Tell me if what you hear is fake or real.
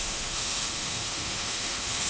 fake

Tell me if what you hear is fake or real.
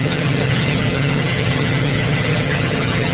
fake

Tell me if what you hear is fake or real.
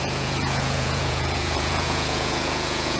fake